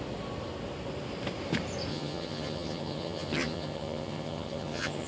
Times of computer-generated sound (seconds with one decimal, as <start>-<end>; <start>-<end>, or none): 1.9-5.1